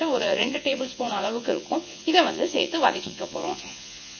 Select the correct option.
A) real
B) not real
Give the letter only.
B